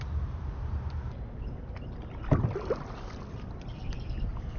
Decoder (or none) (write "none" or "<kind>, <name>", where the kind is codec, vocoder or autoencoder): none